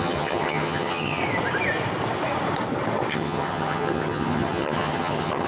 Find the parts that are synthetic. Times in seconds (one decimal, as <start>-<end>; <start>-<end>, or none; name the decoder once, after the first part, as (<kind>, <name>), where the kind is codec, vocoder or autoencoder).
0.0-1.2 (vocoder, HiFi-GAN); 3.1-5.5